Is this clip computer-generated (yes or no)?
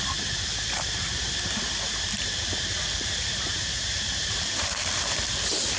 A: yes